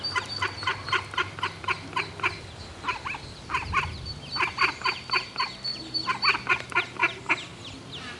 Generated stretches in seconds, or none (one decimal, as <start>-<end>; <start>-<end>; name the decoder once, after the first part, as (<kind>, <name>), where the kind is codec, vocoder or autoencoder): none